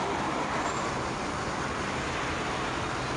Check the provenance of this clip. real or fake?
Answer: real